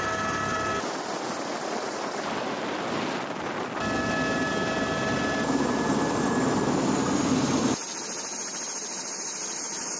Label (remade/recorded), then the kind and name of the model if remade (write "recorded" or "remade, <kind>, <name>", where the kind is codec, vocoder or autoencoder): recorded